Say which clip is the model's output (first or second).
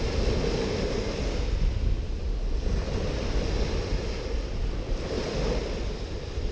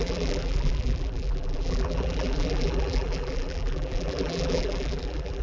second